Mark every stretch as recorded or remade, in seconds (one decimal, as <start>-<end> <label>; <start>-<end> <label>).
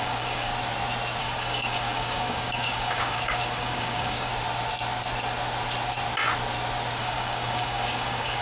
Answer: 0.0-0.5 remade; 0.5-1.2 recorded; 1.2-4.3 remade; 4.3-7.0 recorded; 7.0-8.4 remade